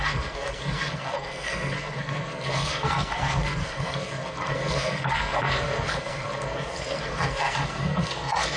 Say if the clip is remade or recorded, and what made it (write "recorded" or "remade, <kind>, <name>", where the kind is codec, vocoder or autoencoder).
remade, codec, SNAC